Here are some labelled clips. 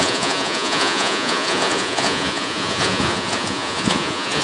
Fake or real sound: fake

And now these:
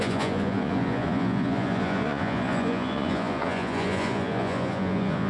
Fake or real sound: fake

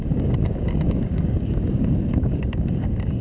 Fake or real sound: fake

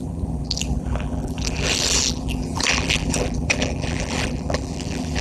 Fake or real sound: fake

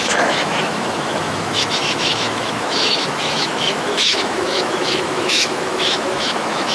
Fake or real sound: fake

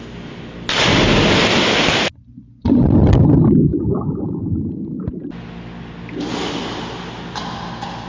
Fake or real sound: real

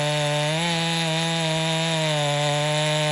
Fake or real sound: real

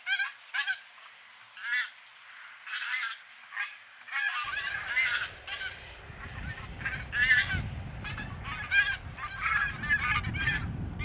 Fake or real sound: real